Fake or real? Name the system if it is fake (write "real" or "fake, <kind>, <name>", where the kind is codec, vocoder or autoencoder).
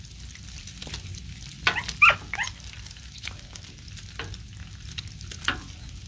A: real